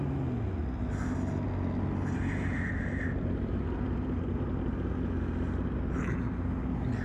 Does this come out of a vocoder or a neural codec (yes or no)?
no